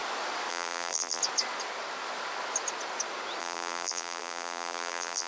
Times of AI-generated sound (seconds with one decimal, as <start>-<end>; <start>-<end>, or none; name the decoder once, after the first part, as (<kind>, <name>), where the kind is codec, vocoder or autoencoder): 0.5-1.2 (vocoder, BigVGAN v2); 3.4-5.3